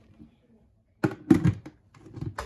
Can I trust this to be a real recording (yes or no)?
yes